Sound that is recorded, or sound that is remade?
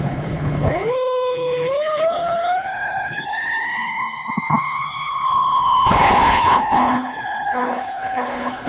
remade